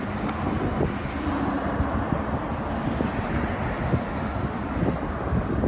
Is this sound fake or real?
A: real